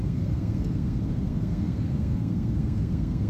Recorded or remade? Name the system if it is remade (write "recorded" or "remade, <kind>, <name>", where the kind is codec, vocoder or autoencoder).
remade, codec, SNAC